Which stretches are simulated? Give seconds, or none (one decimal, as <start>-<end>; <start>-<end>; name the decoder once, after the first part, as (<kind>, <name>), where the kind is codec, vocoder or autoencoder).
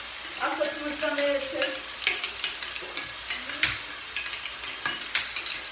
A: none